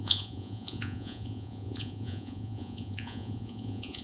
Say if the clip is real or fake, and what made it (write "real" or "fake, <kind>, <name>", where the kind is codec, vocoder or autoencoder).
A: fake, vocoder, Vocos